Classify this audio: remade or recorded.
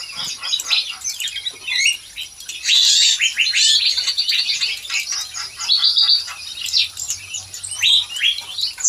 recorded